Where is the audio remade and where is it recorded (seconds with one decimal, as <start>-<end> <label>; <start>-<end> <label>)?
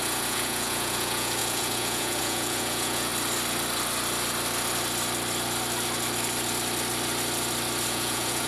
0.0-3.1 remade; 3.1-7.9 recorded; 7.9-8.5 remade